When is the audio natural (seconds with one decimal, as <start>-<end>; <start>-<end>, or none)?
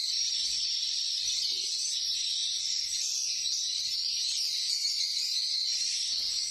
1.4-2.4